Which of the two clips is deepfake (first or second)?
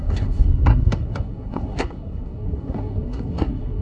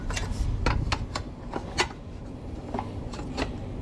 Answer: first